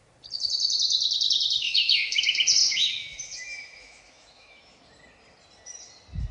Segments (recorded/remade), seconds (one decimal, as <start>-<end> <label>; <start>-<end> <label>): 0.0-1.6 recorded; 1.6-2.2 remade; 2.2-2.6 recorded; 2.6-4.8 remade; 4.8-6.3 recorded